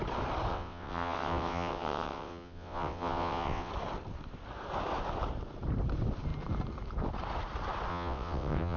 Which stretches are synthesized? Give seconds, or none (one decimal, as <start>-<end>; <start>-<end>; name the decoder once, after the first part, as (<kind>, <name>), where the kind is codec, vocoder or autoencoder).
0.5-3.7 (vocoder, WaveNeXt); 7.9-8.8